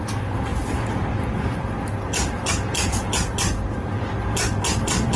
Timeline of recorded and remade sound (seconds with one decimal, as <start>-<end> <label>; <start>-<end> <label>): 0.0-5.2 recorded